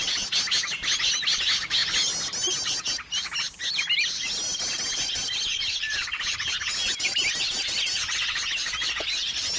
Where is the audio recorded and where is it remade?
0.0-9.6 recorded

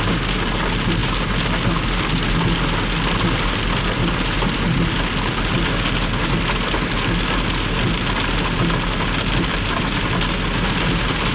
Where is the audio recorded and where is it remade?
0.0-11.3 recorded

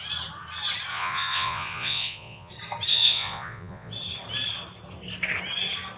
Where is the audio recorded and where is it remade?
0.0-0.9 recorded; 0.9-2.5 remade; 2.5-2.9 recorded; 2.9-3.9 remade; 3.9-6.0 recorded